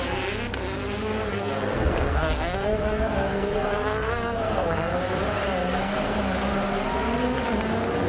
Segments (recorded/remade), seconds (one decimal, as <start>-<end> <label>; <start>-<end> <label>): 0.0-1.3 recorded; 1.3-5.0 remade; 5.0-5.6 recorded; 5.6-6.2 remade; 6.2-8.1 recorded